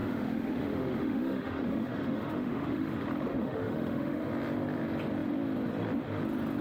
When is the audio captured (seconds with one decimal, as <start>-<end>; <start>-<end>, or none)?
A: 2.9-3.3; 4.3-6.6

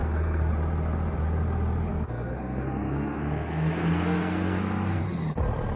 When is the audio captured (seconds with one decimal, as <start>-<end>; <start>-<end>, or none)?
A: 0.5-1.9; 5.0-5.8

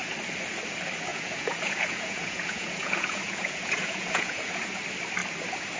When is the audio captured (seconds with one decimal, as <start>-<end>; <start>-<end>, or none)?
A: 0.0-1.1; 4.6-5.8

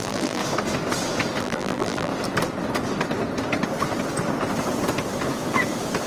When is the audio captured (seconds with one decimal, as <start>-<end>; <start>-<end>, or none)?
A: 0.4-1.4; 2.1-6.1

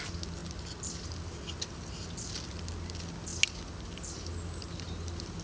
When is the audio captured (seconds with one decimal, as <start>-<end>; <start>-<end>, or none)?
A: 0.0-5.4

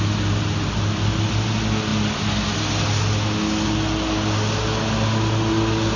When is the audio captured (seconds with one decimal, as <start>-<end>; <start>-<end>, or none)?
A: 0.0-6.0